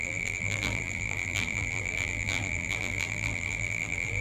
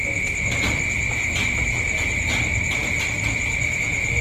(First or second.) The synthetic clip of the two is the first